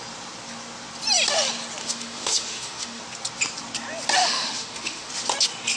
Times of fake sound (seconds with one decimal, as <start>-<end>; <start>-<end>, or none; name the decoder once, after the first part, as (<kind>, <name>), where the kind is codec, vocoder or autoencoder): 1.8-3.0 (autoencoder, DAC-VAE); 4.2-5.1

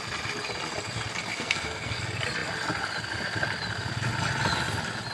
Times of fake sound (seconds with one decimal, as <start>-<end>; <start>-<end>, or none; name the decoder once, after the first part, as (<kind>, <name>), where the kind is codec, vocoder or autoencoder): 1.3-2.0 (codec, SNAC)

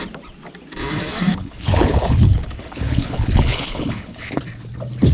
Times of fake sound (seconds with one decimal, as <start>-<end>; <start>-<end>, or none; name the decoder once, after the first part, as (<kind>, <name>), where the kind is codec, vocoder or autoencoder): 1.3-4.4 (codec, HILCodec)

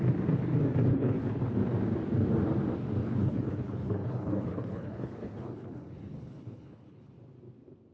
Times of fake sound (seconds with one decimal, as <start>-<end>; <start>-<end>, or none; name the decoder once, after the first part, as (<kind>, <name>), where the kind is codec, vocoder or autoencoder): 0.9-1.4 (codec, HILCodec); 3.0-7.1

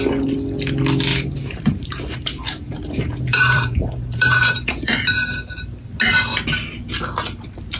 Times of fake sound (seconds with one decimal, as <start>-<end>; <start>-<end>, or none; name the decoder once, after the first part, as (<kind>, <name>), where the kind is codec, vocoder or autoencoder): 1.1-5.0 (vocoder, BigVGAN v2)

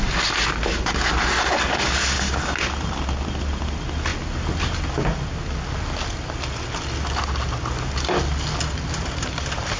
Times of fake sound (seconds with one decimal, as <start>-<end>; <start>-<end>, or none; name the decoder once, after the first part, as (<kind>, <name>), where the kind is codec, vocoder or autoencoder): none

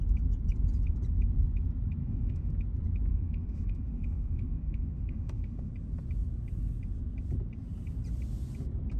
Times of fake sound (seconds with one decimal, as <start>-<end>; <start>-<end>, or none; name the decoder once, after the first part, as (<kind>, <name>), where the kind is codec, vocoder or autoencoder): 2.0-2.5 (autoencoder, DAC-VAE); 3.1-5.7